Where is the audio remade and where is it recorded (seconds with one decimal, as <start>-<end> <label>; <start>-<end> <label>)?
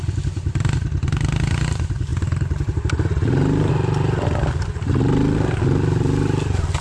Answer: 0.0-6.8 recorded